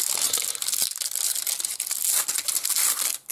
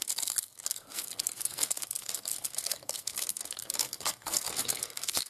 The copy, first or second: second